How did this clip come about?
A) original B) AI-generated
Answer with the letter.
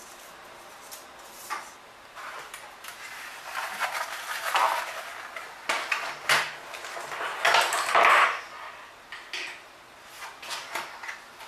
A